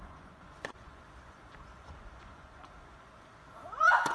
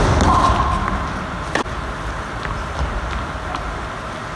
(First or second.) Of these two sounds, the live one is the second